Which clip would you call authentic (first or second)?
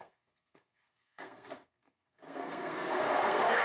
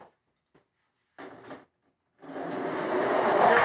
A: second